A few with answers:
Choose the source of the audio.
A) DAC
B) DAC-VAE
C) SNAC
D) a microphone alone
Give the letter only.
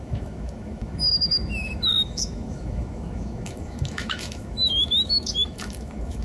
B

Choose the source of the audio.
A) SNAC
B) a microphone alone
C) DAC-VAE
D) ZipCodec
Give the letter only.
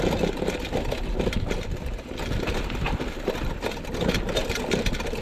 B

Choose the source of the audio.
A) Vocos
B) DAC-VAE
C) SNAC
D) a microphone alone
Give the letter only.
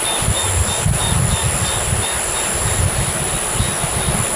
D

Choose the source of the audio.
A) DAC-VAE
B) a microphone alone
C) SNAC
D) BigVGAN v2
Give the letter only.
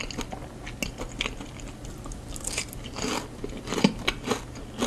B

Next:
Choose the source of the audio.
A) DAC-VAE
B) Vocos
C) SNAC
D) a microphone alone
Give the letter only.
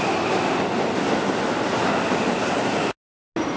D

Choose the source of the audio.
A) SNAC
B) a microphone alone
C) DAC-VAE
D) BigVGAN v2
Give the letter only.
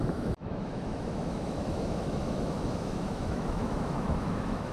C